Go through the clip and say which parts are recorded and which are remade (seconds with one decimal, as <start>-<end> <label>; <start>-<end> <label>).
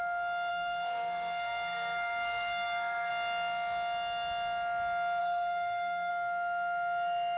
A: 0.0-0.5 recorded; 0.5-3.1 remade; 3.1-5.2 recorded; 5.2-6.1 remade; 6.1-7.4 recorded